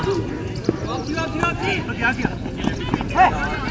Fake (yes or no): no